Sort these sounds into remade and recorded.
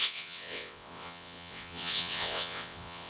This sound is remade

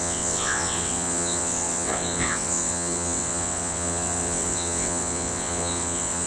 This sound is remade